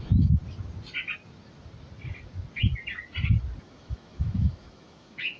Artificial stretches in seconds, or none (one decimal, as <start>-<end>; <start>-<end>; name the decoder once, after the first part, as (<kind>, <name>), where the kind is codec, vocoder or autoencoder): 0.0-0.4 (autoencoder, DAC-VAE); 3.6-5.4